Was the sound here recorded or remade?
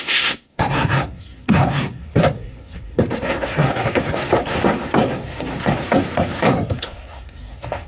remade